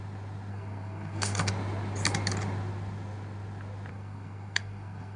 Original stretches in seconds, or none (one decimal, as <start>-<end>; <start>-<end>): 0.0-0.5; 1.5-3.9